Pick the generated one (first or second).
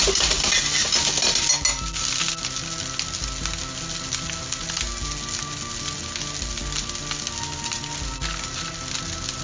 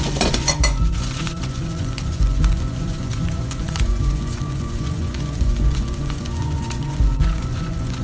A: second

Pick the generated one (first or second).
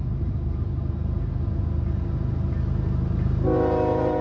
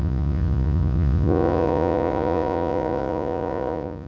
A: second